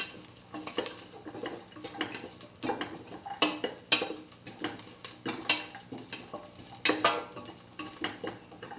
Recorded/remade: recorded